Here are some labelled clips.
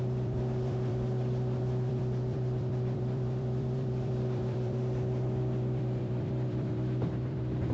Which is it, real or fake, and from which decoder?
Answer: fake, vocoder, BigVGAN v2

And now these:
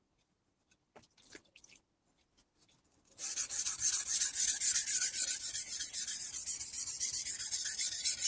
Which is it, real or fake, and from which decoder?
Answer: real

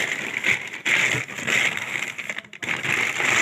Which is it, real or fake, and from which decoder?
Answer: real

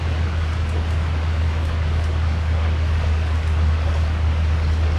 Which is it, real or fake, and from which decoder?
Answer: fake, codec, DAC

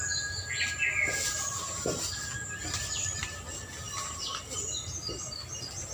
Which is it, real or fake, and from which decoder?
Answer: real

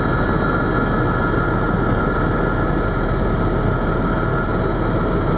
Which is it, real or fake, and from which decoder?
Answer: real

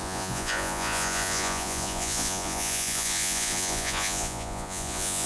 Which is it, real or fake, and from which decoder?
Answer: fake, vocoder, Vocos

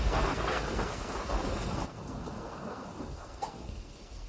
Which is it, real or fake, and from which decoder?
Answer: fake, codec, SNAC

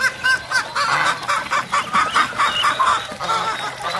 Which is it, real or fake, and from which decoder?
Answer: real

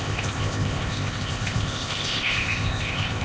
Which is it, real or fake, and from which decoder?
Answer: fake, codec, ZipCodec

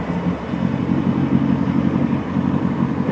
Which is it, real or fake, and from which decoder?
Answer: real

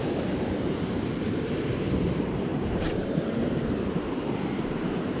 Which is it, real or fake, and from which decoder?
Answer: fake, vocoder, BigVGAN v2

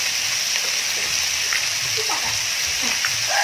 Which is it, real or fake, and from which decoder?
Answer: real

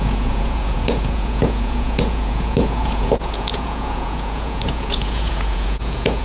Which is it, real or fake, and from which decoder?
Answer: fake, vocoder, Vocos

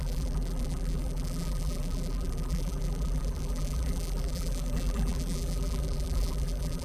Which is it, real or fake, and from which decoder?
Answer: fake, vocoder, BigVGAN v2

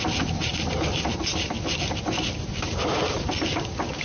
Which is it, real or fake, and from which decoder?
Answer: real